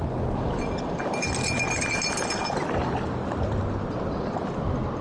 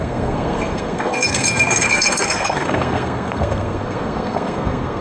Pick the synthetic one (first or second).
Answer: second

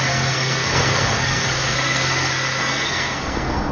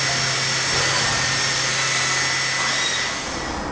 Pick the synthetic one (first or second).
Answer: first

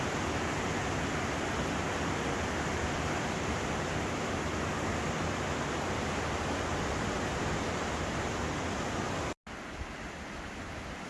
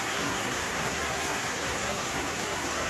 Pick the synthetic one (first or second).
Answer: second